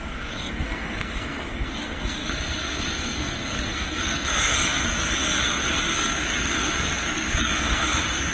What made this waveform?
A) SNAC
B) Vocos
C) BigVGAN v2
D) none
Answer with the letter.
A